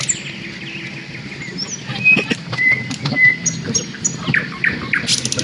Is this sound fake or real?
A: real